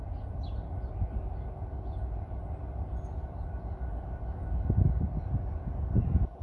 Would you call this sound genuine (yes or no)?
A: yes